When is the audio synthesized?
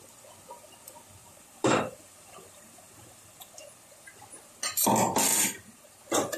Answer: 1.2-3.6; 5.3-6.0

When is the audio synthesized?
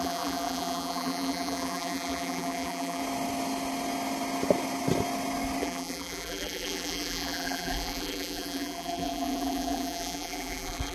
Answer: 0.0-3.0; 5.6-10.9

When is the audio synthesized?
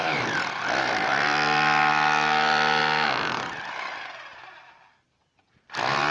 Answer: 0.0-2.8; 4.7-6.1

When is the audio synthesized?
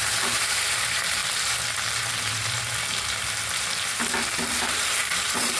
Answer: 0.0-1.2; 4.5-5.6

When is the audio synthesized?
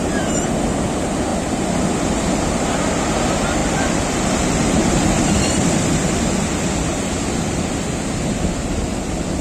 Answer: 1.3-2.2; 3.6-8.4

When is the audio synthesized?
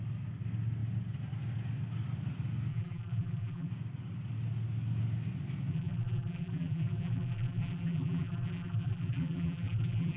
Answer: 2.7-3.7; 5.7-10.2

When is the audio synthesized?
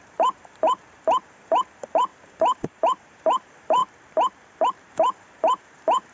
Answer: 0.0-3.8; 4.9-6.1